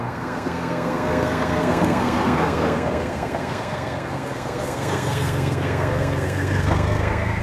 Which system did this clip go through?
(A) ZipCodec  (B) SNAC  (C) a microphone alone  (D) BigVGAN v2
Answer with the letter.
B